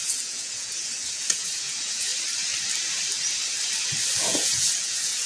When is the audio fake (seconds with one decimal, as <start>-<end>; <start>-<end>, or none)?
0.0-2.1; 4.2-5.3